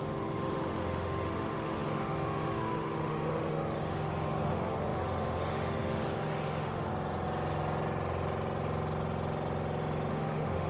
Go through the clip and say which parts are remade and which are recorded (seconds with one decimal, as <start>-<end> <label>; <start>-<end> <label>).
0.0-6.9 remade; 6.9-10.1 recorded; 10.1-10.7 remade